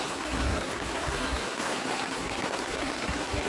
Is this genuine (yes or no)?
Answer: no